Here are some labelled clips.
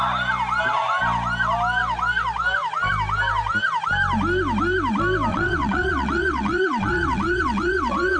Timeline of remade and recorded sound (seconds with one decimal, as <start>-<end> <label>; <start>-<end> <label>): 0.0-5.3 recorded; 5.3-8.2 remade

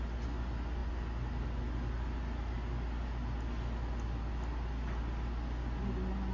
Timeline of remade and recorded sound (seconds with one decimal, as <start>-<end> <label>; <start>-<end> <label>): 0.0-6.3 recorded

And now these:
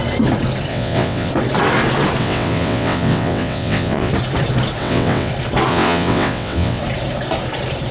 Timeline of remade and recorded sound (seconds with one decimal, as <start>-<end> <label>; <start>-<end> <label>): 0.0-0.7 recorded; 0.7-1.3 remade; 1.3-2.2 recorded; 2.2-4.1 remade; 4.1-4.8 recorded; 4.8-5.3 remade; 5.3-5.7 recorded; 5.7-6.8 remade; 6.8-7.9 recorded